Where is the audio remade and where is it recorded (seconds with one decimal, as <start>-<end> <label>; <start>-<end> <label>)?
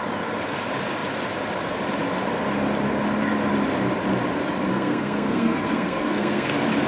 0.0-4.7 recorded; 4.7-6.5 remade; 6.5-6.9 recorded